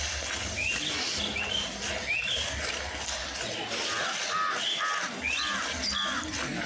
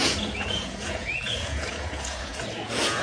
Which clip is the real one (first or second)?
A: first